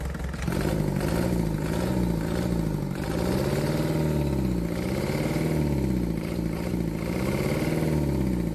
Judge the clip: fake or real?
real